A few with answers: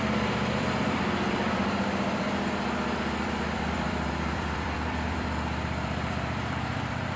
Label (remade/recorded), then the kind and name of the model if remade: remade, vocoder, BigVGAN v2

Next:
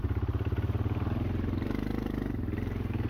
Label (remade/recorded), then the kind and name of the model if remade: remade, vocoder, BigVGAN v2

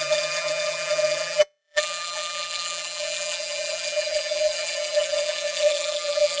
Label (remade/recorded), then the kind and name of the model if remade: remade, vocoder, BigVGAN v2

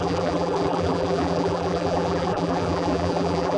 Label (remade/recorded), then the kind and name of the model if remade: remade, vocoder, BigVGAN v2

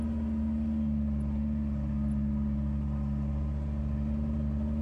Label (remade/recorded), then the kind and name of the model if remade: recorded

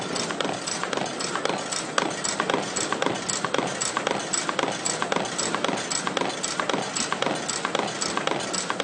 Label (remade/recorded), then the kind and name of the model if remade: recorded